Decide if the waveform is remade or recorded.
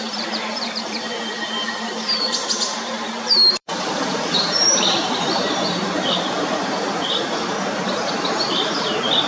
remade